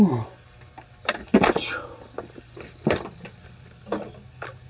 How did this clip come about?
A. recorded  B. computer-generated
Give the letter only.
A